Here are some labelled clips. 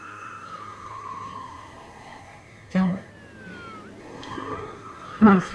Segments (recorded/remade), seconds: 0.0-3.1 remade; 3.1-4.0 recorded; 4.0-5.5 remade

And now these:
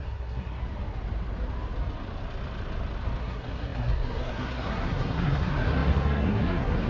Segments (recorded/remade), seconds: 0.0-0.6 remade; 0.6-3.2 recorded; 3.2-6.9 remade